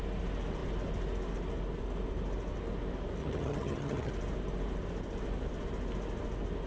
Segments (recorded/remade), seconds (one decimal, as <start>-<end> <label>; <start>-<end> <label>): 0.0-3.2 recorded; 3.2-4.1 remade; 4.1-6.7 recorded

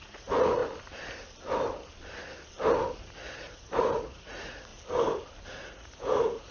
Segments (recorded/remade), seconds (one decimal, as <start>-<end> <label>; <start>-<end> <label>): 0.0-0.6 remade; 0.6-3.0 recorded; 3.0-4.7 remade; 4.7-5.5 recorded; 5.5-6.5 remade

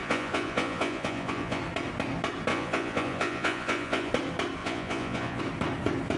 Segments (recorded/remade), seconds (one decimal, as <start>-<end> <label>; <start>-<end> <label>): 0.0-1.6 remade; 1.6-2.5 recorded; 2.5-4.1 remade; 4.1-4.6 recorded; 4.6-5.4 remade; 5.4-6.2 recorded

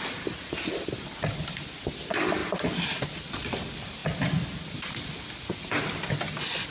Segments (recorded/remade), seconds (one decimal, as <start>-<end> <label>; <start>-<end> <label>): 0.0-6.7 recorded

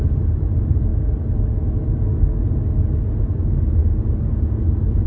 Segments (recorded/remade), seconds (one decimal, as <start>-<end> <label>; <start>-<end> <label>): 0.0-5.1 recorded

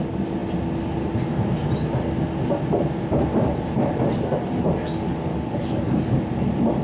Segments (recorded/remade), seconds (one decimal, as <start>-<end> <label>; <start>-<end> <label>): 0.0-5.3 recorded; 5.3-6.2 remade; 6.2-6.8 recorded